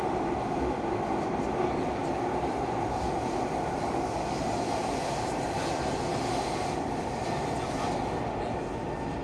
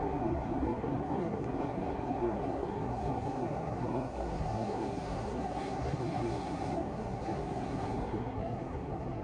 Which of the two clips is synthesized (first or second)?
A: second